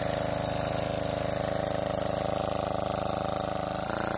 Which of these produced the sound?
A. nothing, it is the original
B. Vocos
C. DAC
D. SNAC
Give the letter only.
A